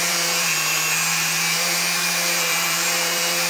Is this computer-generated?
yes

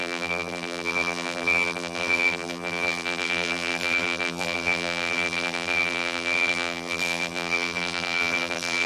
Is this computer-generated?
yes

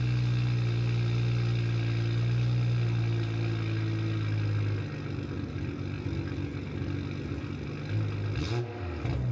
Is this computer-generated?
no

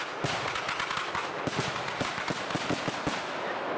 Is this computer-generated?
no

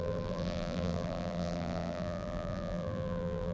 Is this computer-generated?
yes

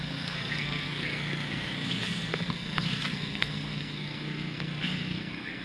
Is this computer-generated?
yes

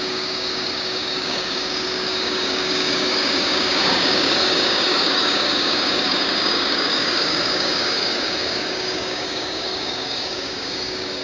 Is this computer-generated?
yes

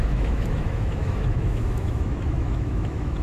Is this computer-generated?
yes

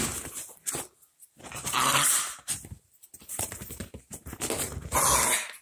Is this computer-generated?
no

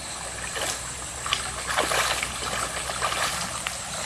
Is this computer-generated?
no